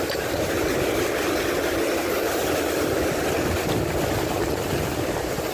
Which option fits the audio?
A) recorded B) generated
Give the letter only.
A